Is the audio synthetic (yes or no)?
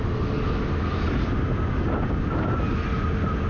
no